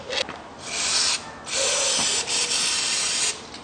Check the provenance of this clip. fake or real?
real